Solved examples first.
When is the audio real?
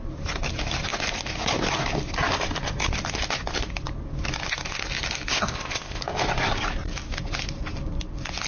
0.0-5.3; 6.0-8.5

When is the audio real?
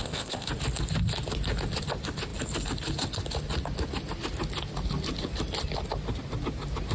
0.5-6.9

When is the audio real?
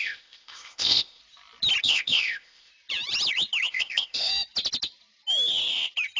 1.2-1.8; 2.7-3.7; 4.3-6.2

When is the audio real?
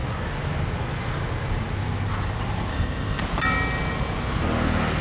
0.0-2.7; 3.2-5.0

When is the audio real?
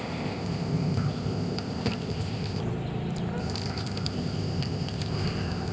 2.6-3.4